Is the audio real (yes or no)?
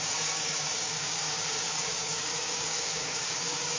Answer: no